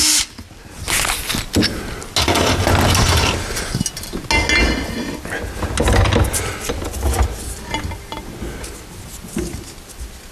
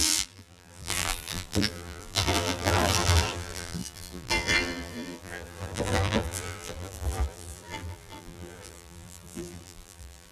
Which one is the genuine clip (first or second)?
first